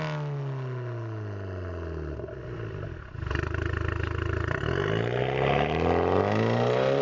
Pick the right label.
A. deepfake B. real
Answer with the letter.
B